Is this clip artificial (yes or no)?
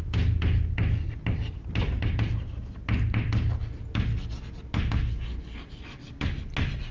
no